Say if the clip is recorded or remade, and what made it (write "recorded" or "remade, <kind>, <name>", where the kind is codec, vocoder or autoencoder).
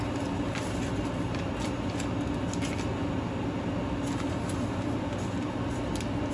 recorded